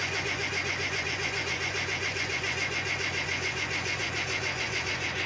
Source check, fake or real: fake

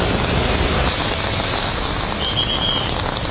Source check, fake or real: real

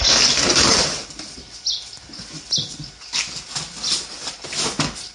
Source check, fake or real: real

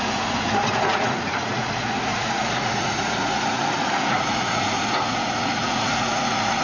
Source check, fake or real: fake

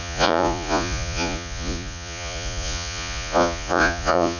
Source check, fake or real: fake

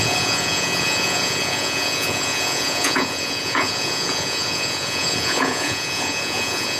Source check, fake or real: fake